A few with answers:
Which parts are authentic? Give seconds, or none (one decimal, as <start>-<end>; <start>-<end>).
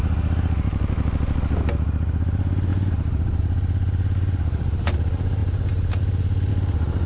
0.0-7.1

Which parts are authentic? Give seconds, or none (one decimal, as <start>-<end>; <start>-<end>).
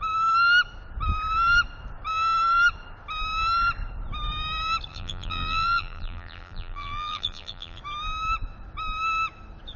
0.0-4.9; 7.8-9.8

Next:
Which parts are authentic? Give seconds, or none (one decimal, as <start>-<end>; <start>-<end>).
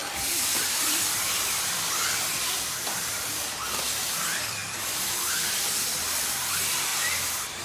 6.9-7.6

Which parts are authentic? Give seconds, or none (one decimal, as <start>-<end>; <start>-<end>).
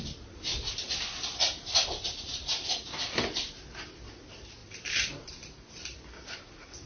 0.5-2.0; 4.6-5.2